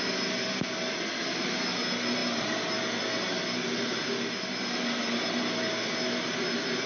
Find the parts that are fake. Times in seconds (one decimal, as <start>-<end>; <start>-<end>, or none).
none